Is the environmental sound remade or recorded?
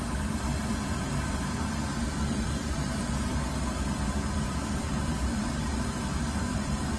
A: remade